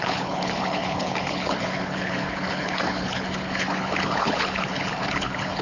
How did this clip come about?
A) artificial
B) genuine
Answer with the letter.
A